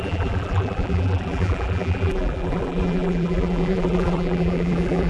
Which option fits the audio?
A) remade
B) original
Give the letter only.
A